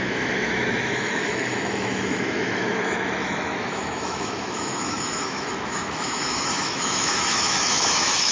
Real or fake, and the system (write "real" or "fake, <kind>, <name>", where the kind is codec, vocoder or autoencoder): fake, autoencoder, DAC-VAE